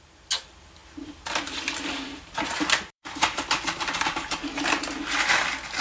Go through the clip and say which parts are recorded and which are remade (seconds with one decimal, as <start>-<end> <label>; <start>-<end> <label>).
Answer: 0.0-0.8 recorded; 0.8-4.3 remade; 4.3-5.8 recorded